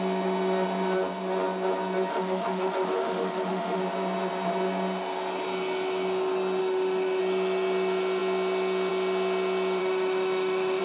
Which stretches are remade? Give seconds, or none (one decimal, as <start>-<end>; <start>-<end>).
2.1-3.8; 6.6-7.2; 9.8-10.8